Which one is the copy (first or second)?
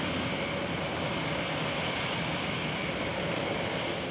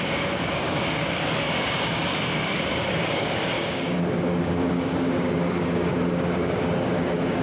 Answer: second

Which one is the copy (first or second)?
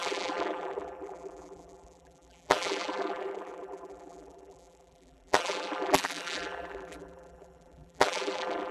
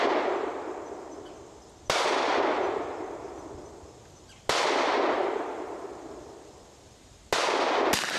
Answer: first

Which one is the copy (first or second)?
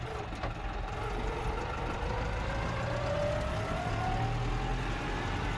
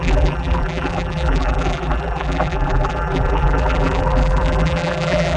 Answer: second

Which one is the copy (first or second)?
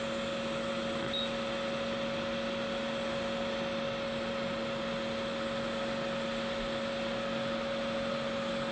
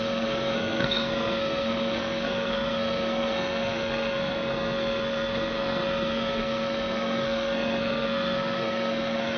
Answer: second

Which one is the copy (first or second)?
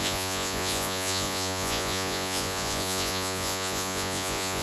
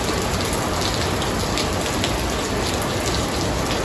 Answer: first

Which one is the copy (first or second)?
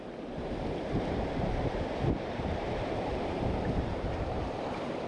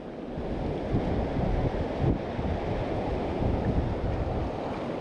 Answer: first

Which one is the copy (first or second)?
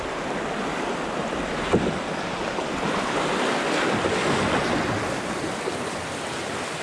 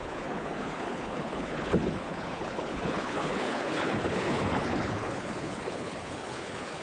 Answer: second